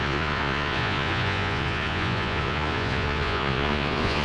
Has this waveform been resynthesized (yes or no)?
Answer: yes